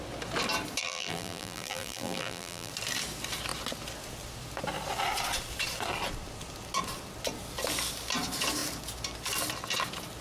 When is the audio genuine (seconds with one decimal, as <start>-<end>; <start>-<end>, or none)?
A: 0.0-0.8; 2.7-10.2